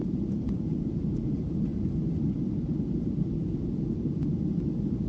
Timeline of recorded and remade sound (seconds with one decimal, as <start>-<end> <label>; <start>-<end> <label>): 0.0-1.7 remade; 1.7-3.7 recorded; 3.7-5.1 remade